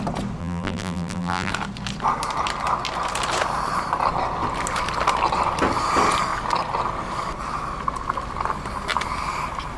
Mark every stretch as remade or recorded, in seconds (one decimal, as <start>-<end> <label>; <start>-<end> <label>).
0.0-0.4 recorded; 0.4-1.5 remade; 1.5-9.8 recorded